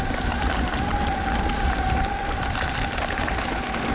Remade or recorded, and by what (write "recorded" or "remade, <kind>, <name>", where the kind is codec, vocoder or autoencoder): recorded